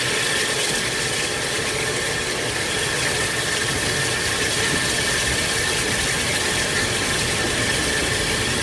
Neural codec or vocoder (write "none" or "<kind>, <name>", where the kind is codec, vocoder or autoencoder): none